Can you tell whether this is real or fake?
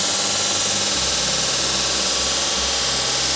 real